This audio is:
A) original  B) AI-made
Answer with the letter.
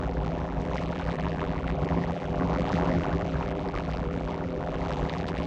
B